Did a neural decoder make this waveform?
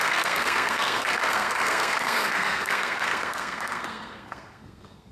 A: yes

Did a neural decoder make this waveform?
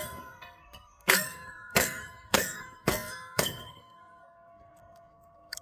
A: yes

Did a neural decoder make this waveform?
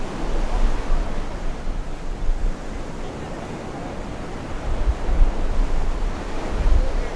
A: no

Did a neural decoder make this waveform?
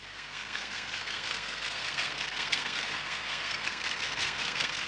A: yes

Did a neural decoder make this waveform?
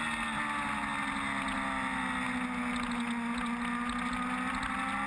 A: no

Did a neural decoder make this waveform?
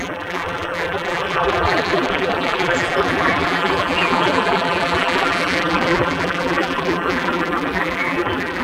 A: yes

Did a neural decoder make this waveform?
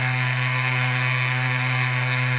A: yes